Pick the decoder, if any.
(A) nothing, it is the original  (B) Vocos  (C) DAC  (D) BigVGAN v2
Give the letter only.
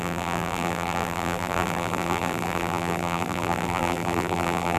D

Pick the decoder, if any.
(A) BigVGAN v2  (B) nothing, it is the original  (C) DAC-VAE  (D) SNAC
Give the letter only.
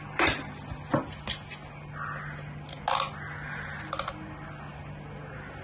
B